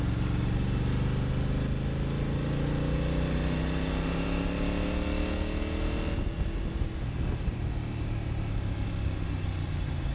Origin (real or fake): real